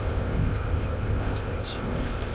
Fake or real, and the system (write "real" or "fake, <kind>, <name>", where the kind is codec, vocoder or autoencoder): fake, codec, ZipCodec